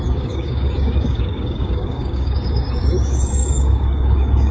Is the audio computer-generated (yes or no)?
yes